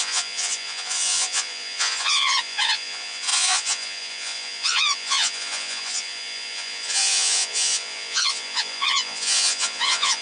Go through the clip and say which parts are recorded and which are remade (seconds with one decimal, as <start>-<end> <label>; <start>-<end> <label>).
0.0-10.2 remade